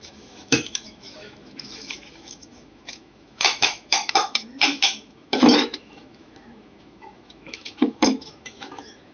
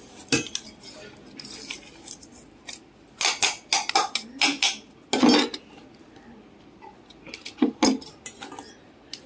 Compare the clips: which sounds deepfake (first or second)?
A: first